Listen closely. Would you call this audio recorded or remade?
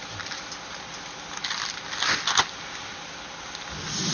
recorded